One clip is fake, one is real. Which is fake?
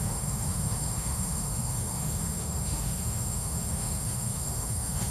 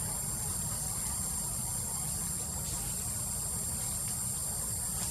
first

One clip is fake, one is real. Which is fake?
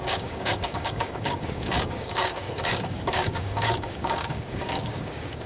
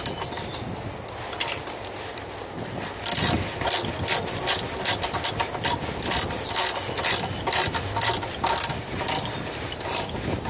first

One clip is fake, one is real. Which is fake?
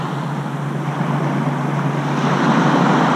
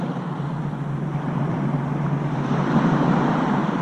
second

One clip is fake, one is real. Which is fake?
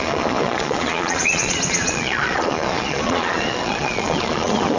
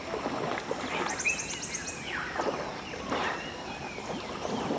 first